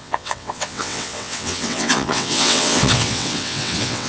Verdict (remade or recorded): remade